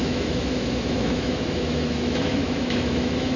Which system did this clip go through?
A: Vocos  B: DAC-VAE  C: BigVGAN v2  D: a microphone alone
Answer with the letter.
B